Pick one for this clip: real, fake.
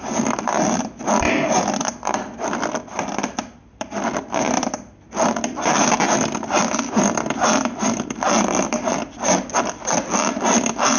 real